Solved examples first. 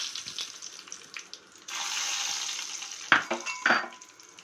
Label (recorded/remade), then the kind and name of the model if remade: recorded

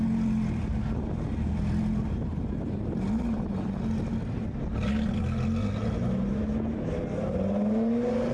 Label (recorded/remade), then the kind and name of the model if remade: recorded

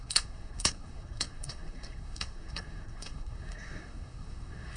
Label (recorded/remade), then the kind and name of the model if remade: remade, codec, SNAC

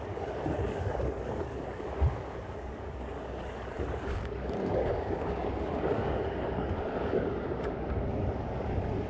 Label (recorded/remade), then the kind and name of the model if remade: remade, codec, DAC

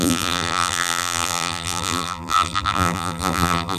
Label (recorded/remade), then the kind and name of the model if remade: remade, vocoder, BigVGAN v2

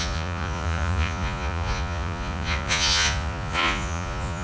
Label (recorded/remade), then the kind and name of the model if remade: remade, vocoder, Vocos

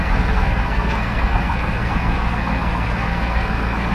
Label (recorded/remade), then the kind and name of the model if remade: remade, codec, SNAC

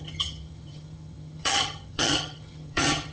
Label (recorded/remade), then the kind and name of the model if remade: remade, vocoder, HiFi-GAN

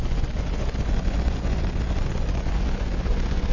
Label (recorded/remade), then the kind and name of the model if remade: remade, vocoder, Vocos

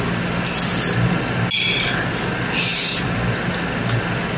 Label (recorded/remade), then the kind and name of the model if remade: recorded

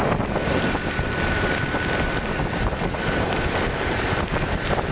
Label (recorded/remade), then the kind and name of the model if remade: remade, vocoder, BigVGAN v2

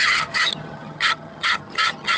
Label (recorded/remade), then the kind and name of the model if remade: remade, vocoder, HiFi-GAN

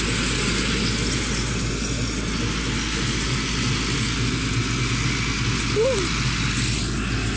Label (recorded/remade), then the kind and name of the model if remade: recorded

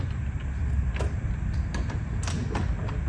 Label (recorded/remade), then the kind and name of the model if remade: recorded